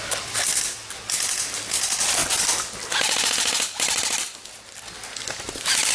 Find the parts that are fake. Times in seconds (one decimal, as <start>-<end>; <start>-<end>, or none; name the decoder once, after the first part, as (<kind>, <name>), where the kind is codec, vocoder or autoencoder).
none